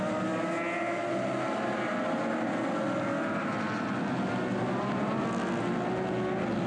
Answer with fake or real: real